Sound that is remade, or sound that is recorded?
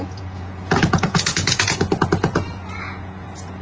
remade